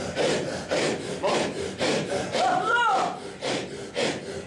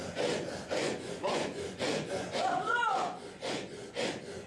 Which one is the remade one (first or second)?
second